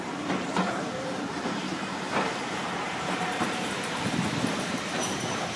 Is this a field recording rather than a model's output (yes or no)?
no